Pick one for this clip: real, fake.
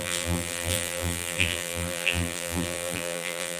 fake